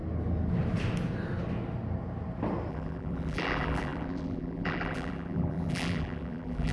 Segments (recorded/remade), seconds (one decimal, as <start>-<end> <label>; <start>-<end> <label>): 0.0-2.7 recorded; 2.7-6.7 remade